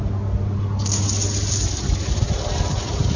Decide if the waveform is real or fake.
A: real